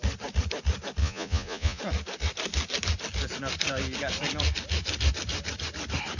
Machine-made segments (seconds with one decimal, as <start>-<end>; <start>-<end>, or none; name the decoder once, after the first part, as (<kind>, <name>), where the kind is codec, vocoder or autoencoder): 1.0-1.8 (vocoder, Vocos)